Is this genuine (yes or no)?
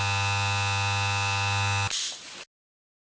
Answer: yes